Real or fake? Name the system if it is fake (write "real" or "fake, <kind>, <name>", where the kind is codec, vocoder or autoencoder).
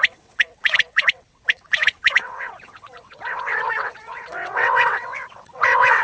fake, vocoder, WaveNeXt